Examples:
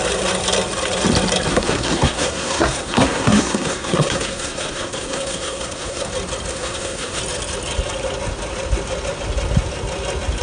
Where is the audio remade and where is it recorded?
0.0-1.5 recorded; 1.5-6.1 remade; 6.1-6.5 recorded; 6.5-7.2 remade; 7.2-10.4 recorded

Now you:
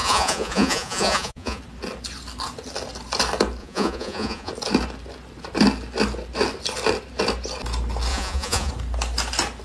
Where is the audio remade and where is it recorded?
0.0-1.6 remade; 1.6-3.6 recorded; 3.6-4.5 remade; 4.5-8.1 recorded; 8.1-8.7 remade; 8.7-9.6 recorded

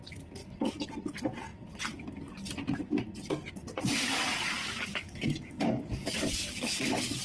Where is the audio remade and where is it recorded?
0.0-0.4 recorded; 0.4-0.9 remade; 0.9-4.6 recorded; 4.6-7.2 remade

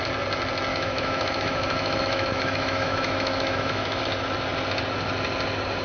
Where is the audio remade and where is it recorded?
0.0-0.7 recorded; 0.7-4.0 remade; 4.0-5.8 recorded

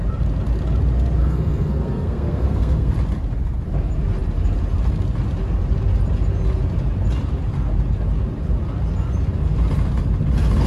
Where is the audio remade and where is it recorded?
0.0-1.2 recorded; 1.2-2.9 remade; 2.9-10.7 recorded